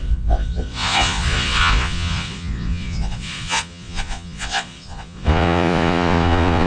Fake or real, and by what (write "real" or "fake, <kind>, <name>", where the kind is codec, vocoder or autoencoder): fake, vocoder, Vocos